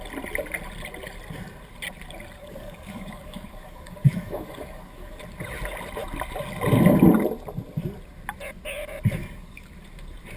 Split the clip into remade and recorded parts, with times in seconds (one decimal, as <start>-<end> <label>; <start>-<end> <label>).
0.0-2.4 recorded; 2.4-5.2 remade; 5.2-9.2 recorded; 9.2-9.7 remade; 9.7-10.4 recorded